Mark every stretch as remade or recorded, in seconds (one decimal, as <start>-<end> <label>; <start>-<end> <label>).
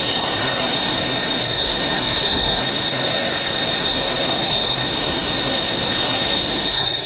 0.0-7.1 remade